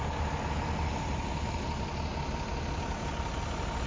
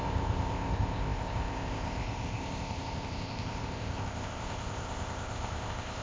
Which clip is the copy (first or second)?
second